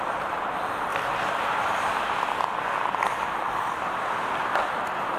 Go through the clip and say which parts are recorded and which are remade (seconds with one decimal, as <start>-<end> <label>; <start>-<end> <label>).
0.0-5.2 recorded